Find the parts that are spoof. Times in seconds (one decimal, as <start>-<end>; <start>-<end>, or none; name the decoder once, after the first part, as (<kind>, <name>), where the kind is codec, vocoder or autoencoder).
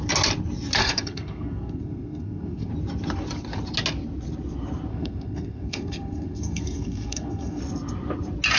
0.8-2.7 (codec, SNAC); 4.9-7.6